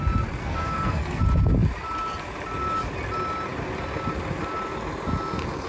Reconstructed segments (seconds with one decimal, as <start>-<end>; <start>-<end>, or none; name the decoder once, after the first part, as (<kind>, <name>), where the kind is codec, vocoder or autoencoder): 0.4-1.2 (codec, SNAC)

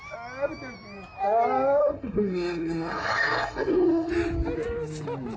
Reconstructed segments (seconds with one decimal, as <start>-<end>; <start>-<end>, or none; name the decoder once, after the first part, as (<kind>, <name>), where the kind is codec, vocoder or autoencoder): 1.8-4.1 (codec, SNAC)

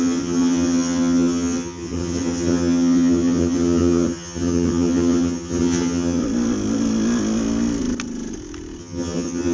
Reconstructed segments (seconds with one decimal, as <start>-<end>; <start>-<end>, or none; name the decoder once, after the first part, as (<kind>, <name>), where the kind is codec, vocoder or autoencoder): 0.0-6.2 (vocoder, HiFi-GAN); 8.8-9.5

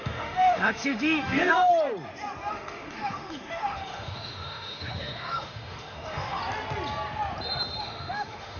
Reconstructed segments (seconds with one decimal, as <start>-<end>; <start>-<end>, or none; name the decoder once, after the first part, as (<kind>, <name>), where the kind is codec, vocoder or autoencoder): 0.0-1.7 (autoencoder, DAC-VAE); 2.5-6.4; 7.8-8.6

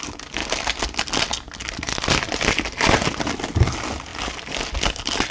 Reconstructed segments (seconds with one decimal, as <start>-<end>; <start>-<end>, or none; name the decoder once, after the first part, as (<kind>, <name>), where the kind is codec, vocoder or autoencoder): none